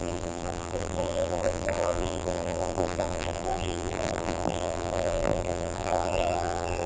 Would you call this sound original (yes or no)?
no